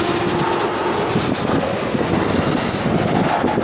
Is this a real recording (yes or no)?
yes